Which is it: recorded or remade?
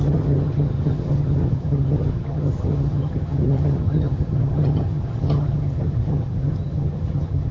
remade